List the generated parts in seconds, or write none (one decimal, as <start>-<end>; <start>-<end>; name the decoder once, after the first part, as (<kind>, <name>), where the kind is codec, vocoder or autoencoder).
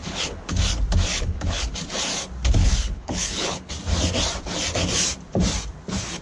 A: 0.0-0.6 (codec, HILCodec); 1.1-1.7; 2.6-3.7